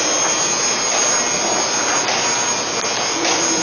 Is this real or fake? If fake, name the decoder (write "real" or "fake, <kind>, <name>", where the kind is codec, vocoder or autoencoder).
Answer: real